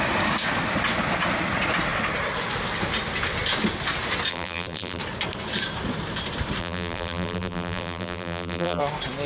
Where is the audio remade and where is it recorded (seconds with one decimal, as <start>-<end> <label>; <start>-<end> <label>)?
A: 0.0-4.3 recorded; 4.3-5.0 remade; 5.0-6.6 recorded; 6.6-8.8 remade; 8.8-9.3 recorded